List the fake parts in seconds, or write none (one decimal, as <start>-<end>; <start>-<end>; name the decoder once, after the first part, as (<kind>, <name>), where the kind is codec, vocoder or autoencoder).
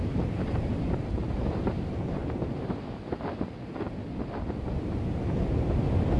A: 0.0-2.2 (vocoder, BigVGAN v2)